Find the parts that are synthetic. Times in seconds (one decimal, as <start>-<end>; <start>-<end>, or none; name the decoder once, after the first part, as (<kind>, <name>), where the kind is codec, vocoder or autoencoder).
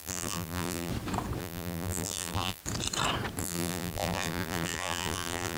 0.0-0.9 (vocoder, BigVGAN v2); 1.4-2.6; 3.4-5.6